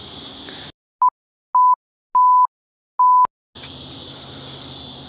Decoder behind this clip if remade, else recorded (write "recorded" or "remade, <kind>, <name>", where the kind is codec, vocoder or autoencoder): recorded